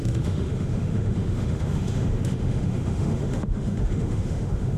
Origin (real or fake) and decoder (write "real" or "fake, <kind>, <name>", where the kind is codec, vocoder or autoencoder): fake, autoencoder, DAC-VAE